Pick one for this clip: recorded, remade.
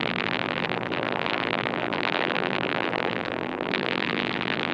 remade